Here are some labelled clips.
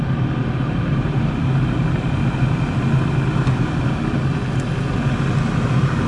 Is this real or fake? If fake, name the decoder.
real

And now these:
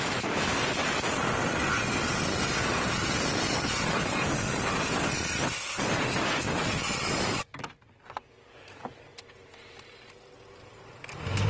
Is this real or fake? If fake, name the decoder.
real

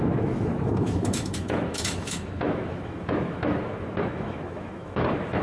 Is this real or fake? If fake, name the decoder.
fake, autoencoder, DAC-VAE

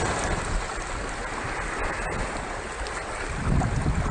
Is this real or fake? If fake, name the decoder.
real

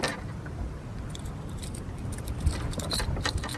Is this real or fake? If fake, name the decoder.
real